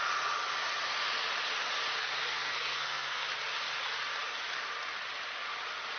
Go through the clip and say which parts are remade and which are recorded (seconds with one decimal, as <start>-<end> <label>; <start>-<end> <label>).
0.0-2.3 recorded; 2.3-3.3 remade; 3.3-6.0 recorded